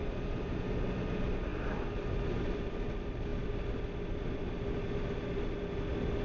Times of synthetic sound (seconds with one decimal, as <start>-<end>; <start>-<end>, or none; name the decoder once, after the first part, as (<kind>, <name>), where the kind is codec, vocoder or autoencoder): none